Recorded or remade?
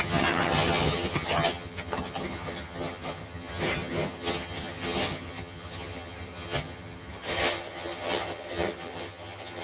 remade